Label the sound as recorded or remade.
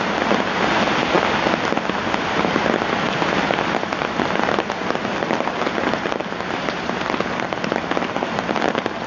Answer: recorded